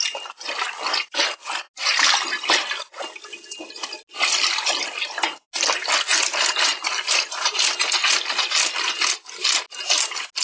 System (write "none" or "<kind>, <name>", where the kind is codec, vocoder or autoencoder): none